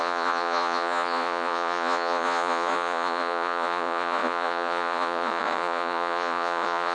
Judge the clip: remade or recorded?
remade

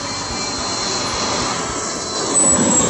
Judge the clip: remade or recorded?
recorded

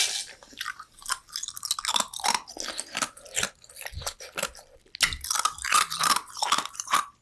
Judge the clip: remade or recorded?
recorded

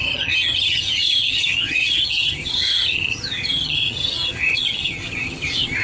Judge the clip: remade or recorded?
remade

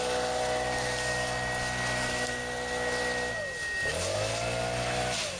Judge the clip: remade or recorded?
recorded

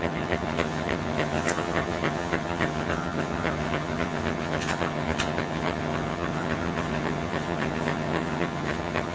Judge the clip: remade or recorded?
remade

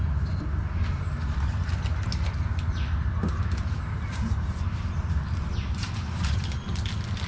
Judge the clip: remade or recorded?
recorded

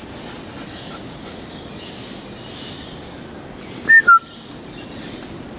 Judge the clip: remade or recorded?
recorded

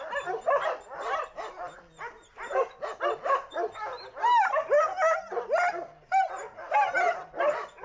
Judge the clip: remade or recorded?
recorded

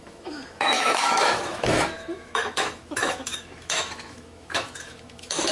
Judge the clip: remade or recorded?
remade